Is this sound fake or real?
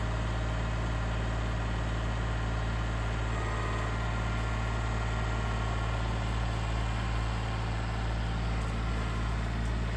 real